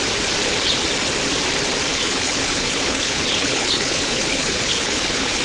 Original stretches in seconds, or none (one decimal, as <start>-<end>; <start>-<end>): 0.0-1.9